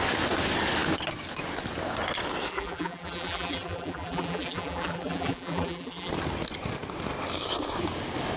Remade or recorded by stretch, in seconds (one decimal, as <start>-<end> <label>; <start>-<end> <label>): 0.0-2.5 recorded; 2.5-6.1 remade; 6.1-8.4 recorded